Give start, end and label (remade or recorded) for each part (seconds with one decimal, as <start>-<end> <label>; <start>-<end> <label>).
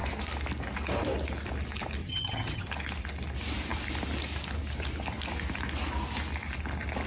0.0-2.0 recorded; 2.0-2.7 remade; 2.7-7.1 recorded